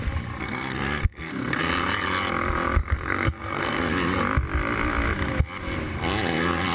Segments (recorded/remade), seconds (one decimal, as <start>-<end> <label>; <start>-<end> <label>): 0.0-0.4 recorded; 0.4-1.6 remade; 1.6-2.8 recorded; 2.8-3.8 remade; 3.8-6.7 recorded